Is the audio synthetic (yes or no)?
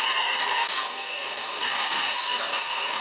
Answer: yes